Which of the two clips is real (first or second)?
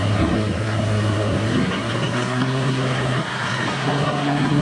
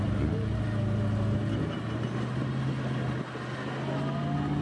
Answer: second